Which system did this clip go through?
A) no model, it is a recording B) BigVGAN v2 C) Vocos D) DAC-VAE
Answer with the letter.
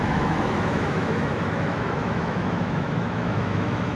D